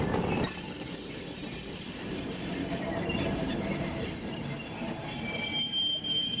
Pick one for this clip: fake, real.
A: fake